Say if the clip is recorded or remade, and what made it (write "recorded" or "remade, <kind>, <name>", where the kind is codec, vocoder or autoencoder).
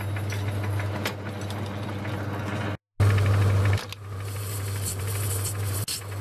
recorded